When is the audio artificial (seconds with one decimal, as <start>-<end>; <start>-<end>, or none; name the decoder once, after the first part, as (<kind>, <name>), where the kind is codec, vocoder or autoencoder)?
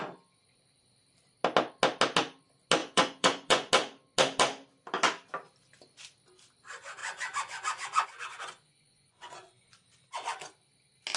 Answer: 2.8-3.7 (vocoder, Vocos); 7.0-9.7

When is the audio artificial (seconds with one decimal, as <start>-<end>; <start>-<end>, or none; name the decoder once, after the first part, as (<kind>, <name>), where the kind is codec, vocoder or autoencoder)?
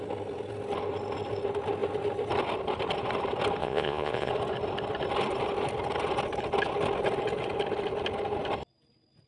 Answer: 3.6-4.3 (vocoder, Vocos)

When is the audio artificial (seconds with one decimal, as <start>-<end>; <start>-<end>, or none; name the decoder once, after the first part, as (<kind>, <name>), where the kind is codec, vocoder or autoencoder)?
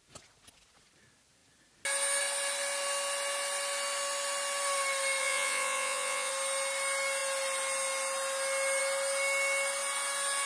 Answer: 5.2-6.3 (vocoder, Vocos)